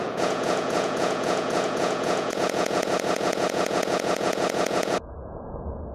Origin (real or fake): fake